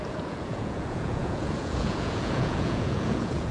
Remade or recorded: remade